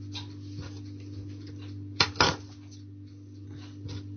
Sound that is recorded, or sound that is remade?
recorded